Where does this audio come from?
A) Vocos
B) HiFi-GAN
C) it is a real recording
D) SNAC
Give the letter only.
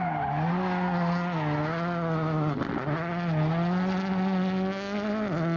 C